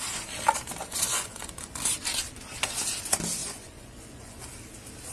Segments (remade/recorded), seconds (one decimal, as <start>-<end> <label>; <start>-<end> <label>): 0.0-0.9 recorded; 0.9-1.8 remade; 1.8-3.4 recorded; 3.4-4.4 remade; 4.4-5.1 recorded